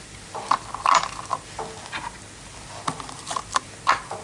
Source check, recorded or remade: recorded